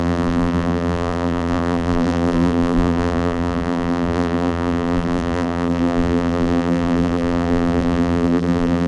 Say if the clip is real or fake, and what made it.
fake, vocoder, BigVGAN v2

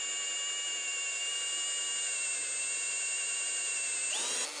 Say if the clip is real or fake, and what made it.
real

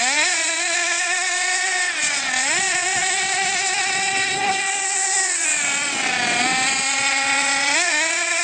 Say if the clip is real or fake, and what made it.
fake, vocoder, WaveNeXt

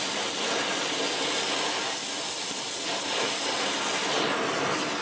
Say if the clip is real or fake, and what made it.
real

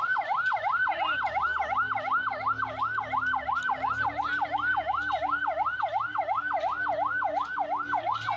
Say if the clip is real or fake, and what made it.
real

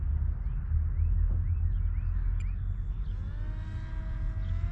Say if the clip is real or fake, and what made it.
real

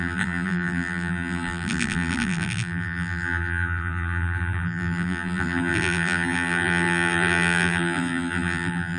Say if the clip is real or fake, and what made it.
fake, vocoder, BigVGAN v2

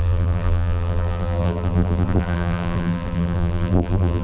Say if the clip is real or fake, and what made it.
fake, vocoder, BigVGAN v2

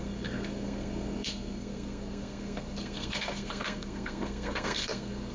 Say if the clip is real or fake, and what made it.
fake, codec, SNAC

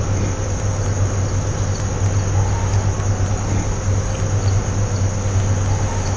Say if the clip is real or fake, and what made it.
real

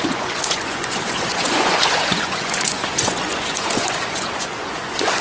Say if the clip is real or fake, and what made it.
fake, vocoder, Vocos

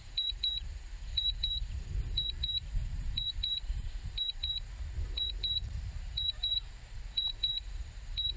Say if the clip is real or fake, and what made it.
fake, vocoder, BigVGAN v2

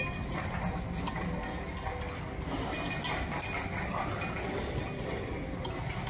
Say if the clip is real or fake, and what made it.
real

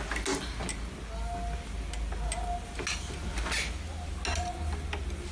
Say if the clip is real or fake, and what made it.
real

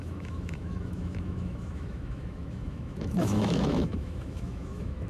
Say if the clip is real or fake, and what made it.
fake, autoencoder, DAC-VAE